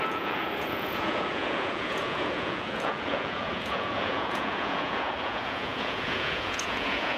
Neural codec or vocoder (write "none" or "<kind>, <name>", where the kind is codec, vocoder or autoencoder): vocoder, Vocos